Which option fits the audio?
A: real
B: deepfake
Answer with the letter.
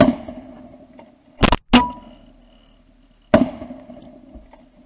A